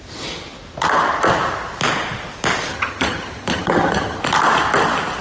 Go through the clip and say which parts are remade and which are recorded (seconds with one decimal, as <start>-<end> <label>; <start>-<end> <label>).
0.0-2.7 recorded; 2.7-4.2 remade; 4.2-5.2 recorded

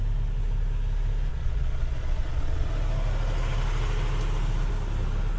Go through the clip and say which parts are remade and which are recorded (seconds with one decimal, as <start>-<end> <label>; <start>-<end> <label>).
0.0-1.3 recorded; 1.3-2.7 remade; 2.7-5.4 recorded

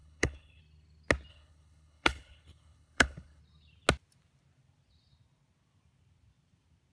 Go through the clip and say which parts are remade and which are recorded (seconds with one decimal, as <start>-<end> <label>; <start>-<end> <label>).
0.0-0.6 remade; 0.6-1.3 recorded; 1.3-3.4 remade; 3.4-6.9 recorded

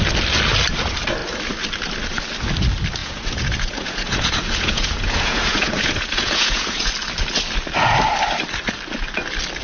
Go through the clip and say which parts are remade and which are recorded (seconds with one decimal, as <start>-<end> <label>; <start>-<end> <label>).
0.0-3.0 recorded; 3.0-6.9 remade; 6.9-9.6 recorded